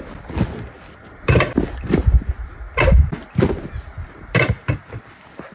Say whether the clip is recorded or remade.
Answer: remade